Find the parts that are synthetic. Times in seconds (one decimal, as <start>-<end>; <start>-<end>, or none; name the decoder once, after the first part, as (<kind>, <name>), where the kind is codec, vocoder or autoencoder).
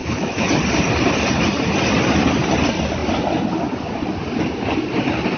0.0-0.5 (autoencoder, DAC-VAE)